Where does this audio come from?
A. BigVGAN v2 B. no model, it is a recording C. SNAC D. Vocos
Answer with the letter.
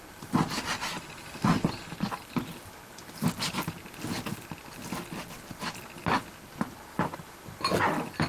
B